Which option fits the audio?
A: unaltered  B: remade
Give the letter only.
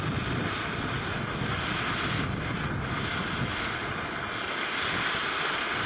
A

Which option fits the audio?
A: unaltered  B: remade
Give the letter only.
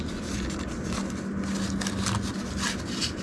A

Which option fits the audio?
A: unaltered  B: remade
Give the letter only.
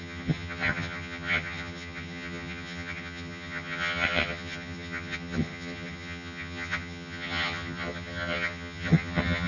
B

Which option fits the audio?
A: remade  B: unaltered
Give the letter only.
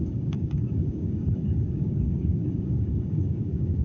A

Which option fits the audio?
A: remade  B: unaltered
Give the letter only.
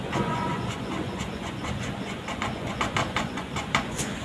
A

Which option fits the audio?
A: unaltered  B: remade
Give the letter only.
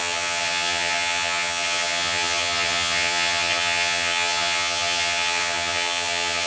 B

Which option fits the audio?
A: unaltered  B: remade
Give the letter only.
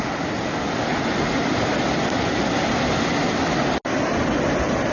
A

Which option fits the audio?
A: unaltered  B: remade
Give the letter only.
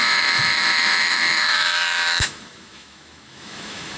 B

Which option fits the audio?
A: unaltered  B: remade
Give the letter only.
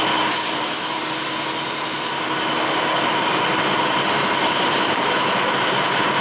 A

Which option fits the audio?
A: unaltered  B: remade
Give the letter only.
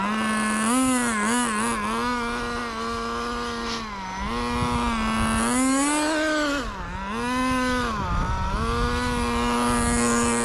A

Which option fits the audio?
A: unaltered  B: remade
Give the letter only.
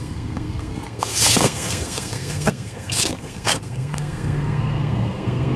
B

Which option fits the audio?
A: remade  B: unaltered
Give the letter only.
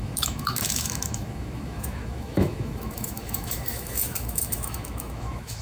A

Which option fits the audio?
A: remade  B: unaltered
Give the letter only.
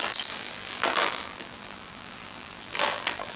A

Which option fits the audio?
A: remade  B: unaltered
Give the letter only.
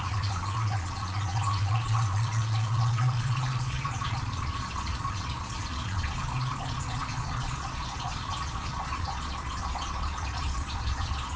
A